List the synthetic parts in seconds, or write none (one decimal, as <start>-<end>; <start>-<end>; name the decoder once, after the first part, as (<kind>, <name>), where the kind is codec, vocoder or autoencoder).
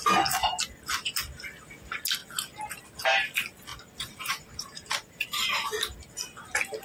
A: 3.7-5.7 (vocoder, BigVGAN v2)